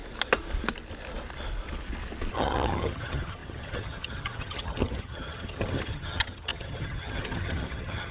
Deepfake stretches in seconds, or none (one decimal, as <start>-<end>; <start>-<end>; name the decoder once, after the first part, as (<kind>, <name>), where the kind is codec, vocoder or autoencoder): 2.3-8.1 (vocoder, HiFi-GAN)